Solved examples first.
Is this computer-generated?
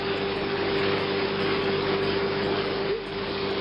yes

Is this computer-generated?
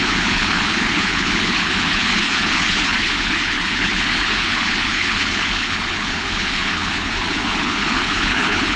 yes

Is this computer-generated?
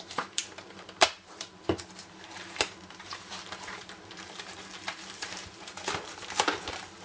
yes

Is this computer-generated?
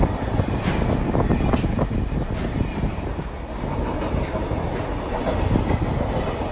no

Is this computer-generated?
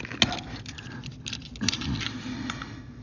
no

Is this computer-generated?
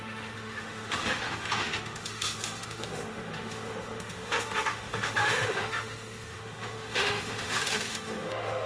yes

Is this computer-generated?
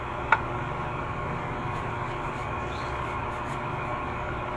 yes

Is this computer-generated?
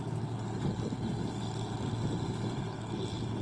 no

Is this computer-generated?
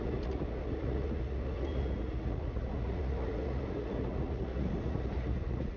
yes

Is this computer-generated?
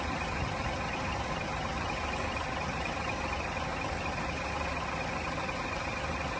no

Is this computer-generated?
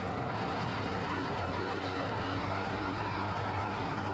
yes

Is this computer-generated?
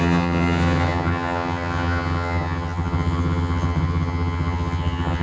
yes